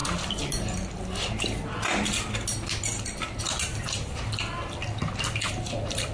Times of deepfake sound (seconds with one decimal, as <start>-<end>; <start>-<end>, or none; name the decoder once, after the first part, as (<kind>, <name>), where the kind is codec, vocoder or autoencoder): none

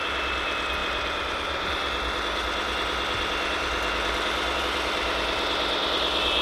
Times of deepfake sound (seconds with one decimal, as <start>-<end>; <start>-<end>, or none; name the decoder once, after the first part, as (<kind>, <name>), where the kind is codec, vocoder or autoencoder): none

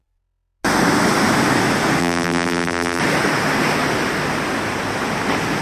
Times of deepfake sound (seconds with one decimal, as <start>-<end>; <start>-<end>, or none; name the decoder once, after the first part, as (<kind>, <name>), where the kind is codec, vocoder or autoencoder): 2.0-3.0 (vocoder, BigVGAN v2)

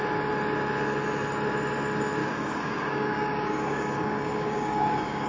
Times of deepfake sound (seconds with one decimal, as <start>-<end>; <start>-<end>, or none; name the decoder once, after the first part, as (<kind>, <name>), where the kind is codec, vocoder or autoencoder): 2.2-5.3 (codec, DAC)

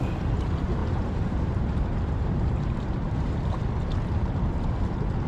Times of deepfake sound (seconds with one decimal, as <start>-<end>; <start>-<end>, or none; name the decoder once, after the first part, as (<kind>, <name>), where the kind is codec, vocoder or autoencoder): 0.8-3.6 (vocoder, BigVGAN v2)

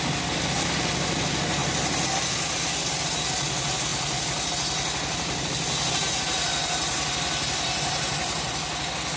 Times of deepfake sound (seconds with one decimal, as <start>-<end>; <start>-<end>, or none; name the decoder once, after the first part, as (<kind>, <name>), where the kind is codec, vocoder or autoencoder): none